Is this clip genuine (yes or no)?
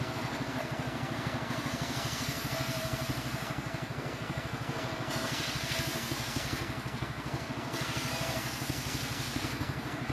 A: no